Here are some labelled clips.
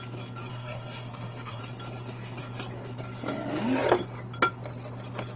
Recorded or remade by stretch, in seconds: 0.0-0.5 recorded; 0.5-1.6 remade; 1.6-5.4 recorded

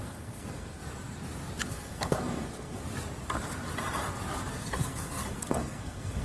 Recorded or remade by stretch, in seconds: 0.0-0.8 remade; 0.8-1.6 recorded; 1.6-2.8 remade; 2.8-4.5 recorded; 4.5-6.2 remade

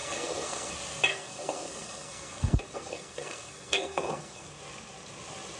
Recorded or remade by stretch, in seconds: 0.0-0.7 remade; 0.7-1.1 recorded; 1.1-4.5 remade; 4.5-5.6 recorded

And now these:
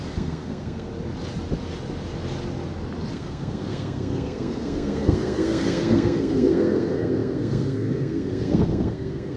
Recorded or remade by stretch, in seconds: 0.0-0.9 remade; 0.9-3.1 recorded; 3.1-9.4 remade